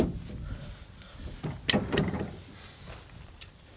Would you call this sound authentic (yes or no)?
yes